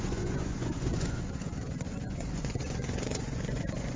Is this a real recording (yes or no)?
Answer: no